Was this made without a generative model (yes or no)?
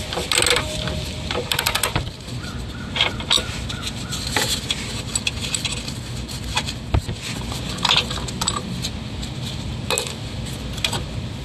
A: yes